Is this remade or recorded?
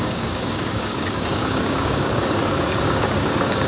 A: remade